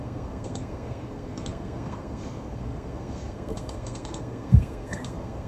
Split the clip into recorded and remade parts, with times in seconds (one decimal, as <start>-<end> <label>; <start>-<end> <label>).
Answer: 0.0-5.5 remade